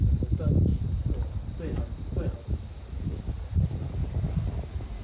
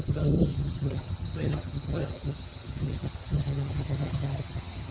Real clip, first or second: first